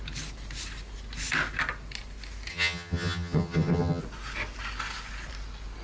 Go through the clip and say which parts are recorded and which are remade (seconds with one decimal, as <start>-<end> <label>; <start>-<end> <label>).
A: 0.0-2.5 recorded; 2.5-4.0 remade; 4.0-5.8 recorded